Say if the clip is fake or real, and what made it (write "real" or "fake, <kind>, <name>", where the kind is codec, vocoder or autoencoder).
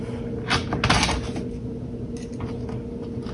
real